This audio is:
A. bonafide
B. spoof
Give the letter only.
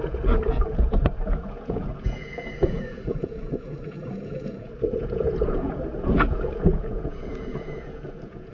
B